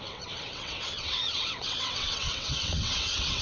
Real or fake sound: fake